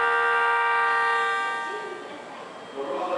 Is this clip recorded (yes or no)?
yes